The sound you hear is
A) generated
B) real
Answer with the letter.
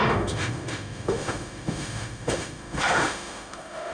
A